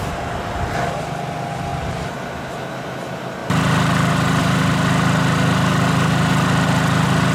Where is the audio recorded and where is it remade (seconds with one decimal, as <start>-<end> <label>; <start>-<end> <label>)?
0.0-1.7 recorded; 1.7-2.2 remade; 2.2-7.3 recorded